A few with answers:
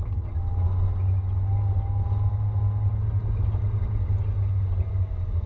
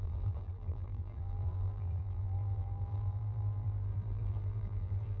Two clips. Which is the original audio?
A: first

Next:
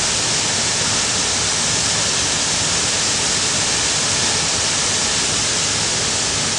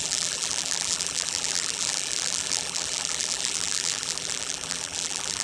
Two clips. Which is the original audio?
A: first